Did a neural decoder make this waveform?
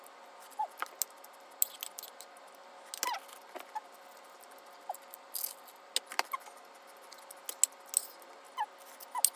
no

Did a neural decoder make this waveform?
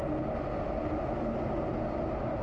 no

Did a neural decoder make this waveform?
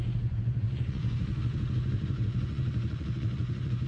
yes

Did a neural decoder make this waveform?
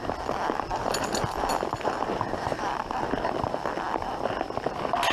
no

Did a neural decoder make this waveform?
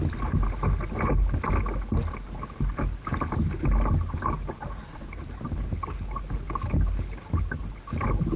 no